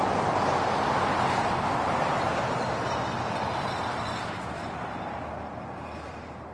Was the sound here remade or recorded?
recorded